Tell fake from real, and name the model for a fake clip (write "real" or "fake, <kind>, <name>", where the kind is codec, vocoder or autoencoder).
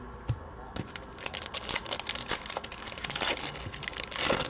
real